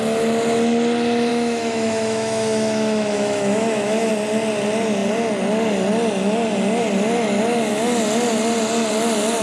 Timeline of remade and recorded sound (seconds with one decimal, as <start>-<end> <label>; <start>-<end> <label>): 0.0-1.3 recorded; 1.3-4.1 remade; 4.1-9.4 recorded